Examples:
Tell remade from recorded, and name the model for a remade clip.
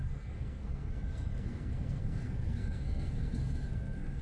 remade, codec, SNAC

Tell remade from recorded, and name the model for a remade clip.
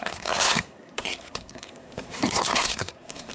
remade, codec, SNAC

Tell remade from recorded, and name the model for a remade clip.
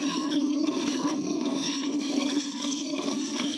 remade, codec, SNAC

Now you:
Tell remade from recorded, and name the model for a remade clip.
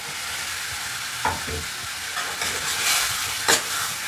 recorded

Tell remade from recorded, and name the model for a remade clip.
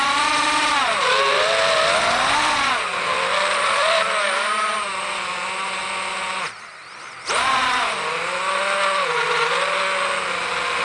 recorded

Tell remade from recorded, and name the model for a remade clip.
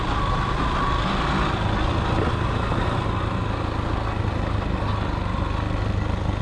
recorded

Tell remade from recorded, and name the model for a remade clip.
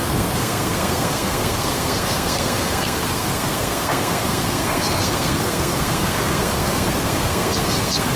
remade, codec, SNAC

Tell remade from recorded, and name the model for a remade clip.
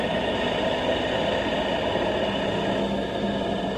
recorded